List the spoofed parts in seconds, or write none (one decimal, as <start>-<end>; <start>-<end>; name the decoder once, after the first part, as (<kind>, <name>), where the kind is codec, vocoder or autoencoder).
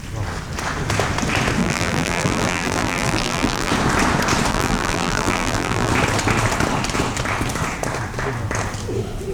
1.6-3.7 (vocoder, BigVGAN v2); 4.5-5.9